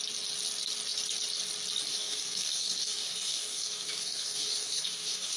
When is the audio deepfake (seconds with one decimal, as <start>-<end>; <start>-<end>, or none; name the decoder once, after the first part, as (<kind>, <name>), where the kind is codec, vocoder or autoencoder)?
1.9-5.4 (codec, DAC)